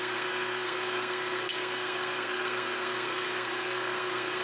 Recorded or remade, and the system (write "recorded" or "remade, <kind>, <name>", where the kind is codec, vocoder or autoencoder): remade, codec, SNAC